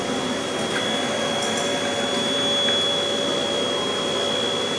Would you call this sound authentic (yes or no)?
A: yes